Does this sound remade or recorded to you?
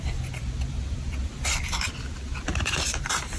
remade